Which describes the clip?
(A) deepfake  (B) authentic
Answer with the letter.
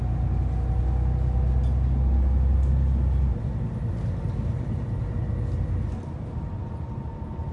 B